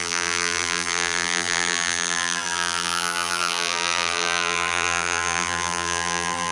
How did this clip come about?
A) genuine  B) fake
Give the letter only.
B